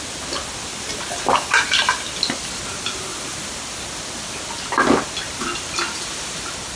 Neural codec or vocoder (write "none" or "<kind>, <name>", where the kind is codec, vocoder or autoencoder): none